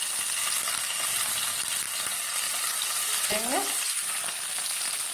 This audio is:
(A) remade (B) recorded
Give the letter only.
B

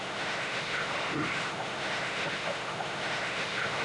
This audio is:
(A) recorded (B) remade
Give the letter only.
B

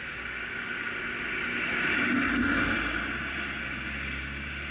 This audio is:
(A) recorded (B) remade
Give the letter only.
A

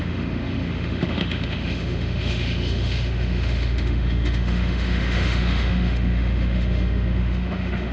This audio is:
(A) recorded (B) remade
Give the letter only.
B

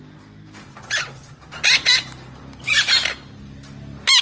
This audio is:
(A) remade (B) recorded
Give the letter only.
B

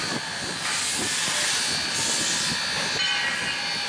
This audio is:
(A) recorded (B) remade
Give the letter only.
A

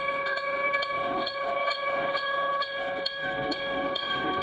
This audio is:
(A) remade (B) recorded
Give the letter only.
A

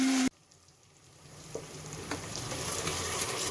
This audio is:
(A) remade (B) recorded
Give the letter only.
B